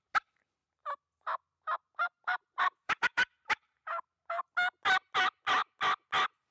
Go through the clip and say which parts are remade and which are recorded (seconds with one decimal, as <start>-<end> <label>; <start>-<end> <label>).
0.0-0.6 recorded; 0.6-4.5 remade; 4.5-6.5 recorded